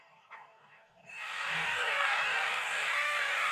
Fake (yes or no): yes